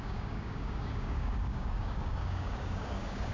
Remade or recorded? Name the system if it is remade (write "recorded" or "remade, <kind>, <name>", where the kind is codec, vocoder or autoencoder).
remade, codec, DAC